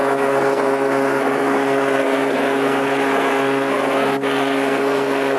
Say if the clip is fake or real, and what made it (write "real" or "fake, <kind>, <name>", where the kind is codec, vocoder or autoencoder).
fake, codec, SNAC